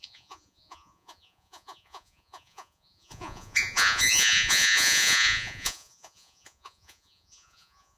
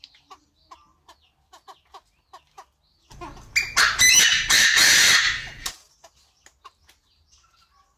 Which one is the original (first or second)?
second